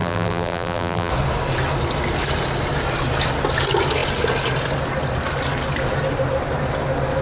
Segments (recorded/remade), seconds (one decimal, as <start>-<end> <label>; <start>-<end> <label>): 0.0-1.1 remade; 1.1-7.2 recorded